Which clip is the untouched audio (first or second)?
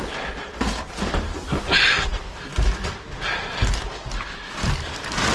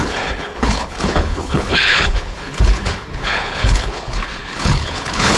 first